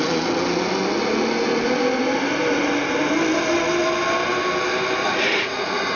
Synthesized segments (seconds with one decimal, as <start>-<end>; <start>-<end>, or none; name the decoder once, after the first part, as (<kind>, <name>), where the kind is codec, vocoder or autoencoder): 5.0-6.0 (vocoder, Vocos)